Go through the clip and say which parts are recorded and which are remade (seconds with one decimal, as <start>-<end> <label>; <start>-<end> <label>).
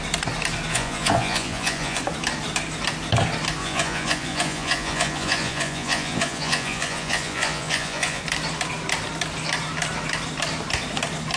0.0-0.7 recorded; 0.7-2.0 remade; 2.0-3.6 recorded; 3.6-8.2 remade; 8.2-11.4 recorded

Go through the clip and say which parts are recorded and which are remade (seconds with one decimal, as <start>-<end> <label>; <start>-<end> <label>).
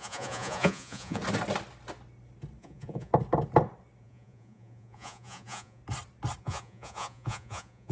0.0-1.2 remade; 1.2-2.6 recorded; 2.6-3.1 remade; 3.1-4.0 recorded; 4.0-5.8 remade; 5.8-6.4 recorded; 6.4-7.9 remade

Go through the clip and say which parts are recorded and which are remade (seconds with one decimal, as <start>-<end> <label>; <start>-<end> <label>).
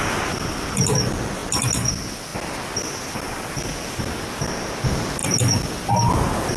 0.0-6.6 recorded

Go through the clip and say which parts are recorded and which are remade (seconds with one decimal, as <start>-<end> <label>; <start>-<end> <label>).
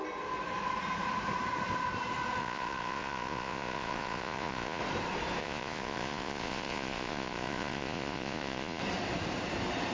0.0-2.4 recorded; 2.4-4.8 remade; 4.8-5.4 recorded; 5.4-8.8 remade; 8.8-9.9 recorded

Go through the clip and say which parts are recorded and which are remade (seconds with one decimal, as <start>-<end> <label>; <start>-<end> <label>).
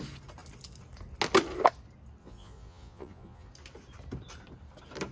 0.0-2.2 recorded; 2.2-3.5 remade; 3.5-5.1 recorded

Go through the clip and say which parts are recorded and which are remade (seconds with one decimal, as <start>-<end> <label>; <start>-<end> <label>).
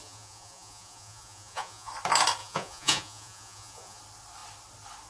0.0-1.9 remade; 1.9-2.4 recorded; 2.4-4.0 remade; 4.0-5.1 recorded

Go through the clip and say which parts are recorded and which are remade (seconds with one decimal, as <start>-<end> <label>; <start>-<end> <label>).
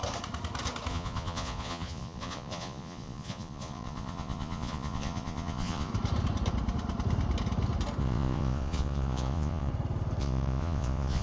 0.0-0.9 recorded; 0.9-5.9 remade; 5.9-8.0 recorded; 8.0-9.7 remade; 9.7-10.2 recorded; 10.2-11.2 remade